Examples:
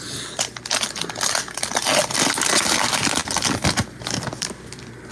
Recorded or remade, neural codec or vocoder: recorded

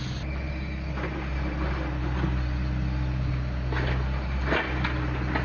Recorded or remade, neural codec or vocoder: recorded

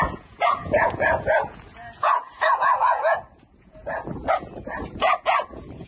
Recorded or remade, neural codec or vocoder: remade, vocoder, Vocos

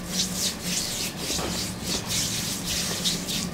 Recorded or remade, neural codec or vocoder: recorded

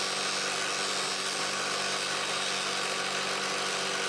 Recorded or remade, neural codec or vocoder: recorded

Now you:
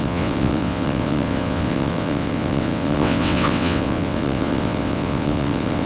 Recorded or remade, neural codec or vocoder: remade, vocoder, WaveNeXt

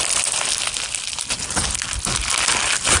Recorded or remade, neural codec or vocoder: recorded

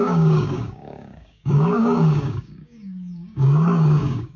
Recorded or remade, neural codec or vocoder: remade, codec, DAC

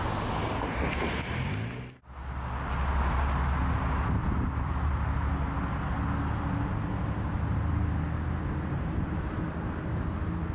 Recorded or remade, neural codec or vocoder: recorded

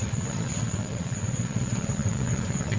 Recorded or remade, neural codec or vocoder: remade, vocoder, WaveNeXt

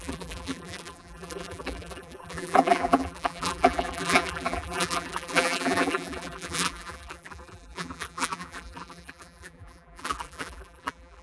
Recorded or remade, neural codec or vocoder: remade, vocoder, BigVGAN v2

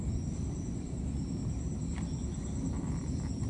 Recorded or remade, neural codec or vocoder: recorded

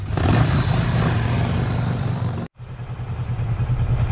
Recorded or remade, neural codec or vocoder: recorded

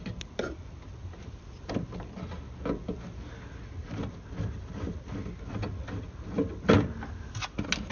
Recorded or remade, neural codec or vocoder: recorded